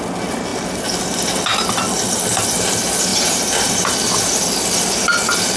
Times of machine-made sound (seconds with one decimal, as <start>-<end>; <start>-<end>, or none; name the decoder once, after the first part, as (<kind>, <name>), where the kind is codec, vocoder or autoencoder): 3.1-3.8 (vocoder, BigVGAN v2)